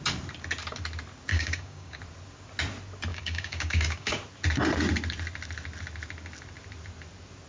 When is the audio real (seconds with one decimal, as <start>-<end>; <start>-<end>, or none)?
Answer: 0.0-1.3; 2.0-3.1; 4.1-7.5